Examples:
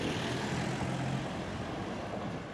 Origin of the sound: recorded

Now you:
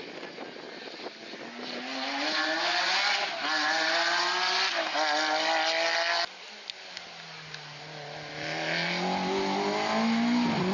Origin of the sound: recorded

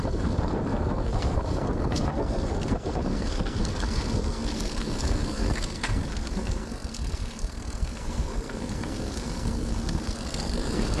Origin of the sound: remade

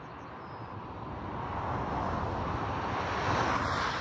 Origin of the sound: recorded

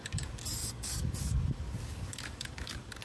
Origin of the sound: remade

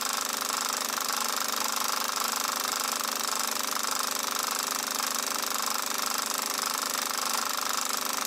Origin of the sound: recorded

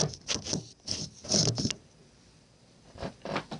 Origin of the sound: recorded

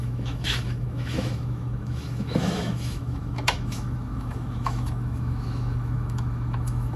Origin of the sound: remade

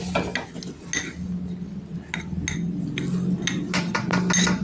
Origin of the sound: recorded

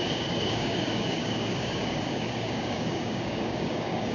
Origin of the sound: remade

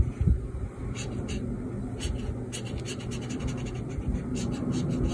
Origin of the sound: recorded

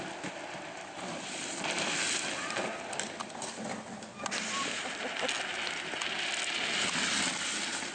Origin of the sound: remade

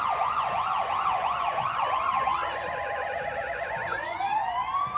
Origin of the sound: remade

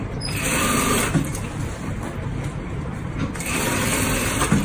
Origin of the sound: remade